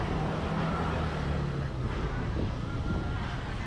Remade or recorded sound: recorded